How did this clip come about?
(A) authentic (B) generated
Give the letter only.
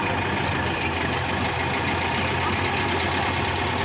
A